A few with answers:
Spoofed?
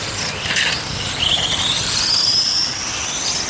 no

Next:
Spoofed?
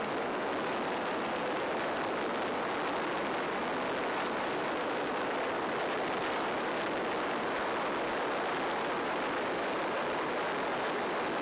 no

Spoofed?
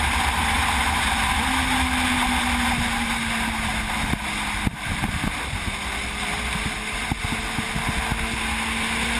no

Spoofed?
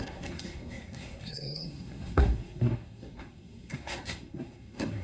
yes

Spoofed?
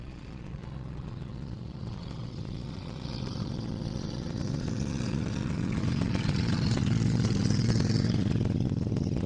yes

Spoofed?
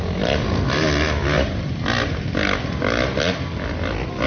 no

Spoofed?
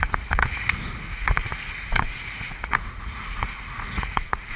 yes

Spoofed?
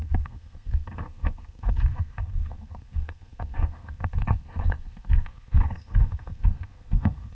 yes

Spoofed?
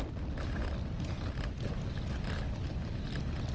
no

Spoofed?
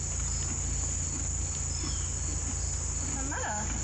no